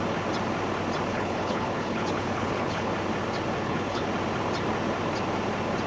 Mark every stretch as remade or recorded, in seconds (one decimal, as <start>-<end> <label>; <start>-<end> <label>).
0.0-1.1 recorded; 1.1-2.9 remade; 2.9-3.6 recorded; 3.6-4.1 remade; 4.1-5.9 recorded